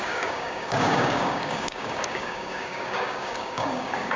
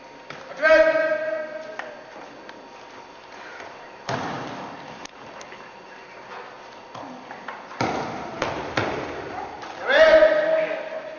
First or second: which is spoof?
first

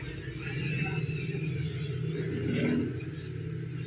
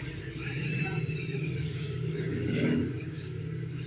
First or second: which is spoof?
second